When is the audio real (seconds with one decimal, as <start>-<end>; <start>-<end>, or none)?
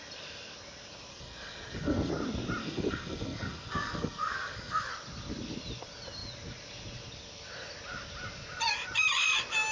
0.0-1.1; 2.1-2.6; 4.9-9.7